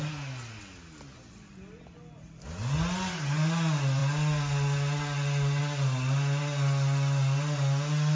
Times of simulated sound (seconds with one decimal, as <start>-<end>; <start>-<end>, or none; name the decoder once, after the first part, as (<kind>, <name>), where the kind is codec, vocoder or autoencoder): none